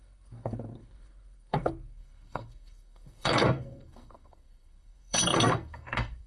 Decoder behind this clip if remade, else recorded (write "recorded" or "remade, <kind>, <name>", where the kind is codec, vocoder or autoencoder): remade, codec, SNAC